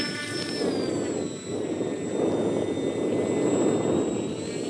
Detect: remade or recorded recorded